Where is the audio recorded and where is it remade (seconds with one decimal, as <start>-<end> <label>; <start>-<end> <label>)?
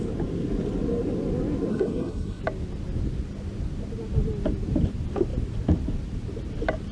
0.0-1.7 recorded; 1.7-2.4 remade; 2.4-6.9 recorded